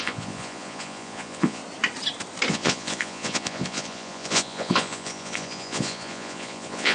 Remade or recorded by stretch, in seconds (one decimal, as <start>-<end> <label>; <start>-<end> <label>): 0.0-1.6 remade; 1.6-2.5 recorded; 2.5-6.9 remade